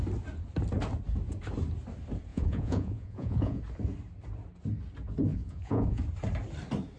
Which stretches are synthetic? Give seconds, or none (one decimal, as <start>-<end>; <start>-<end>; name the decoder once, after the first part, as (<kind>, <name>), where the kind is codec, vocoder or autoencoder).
2.3-3.6 (vocoder, Vocos); 5.3-6.0